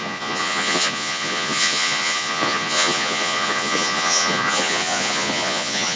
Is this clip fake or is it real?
fake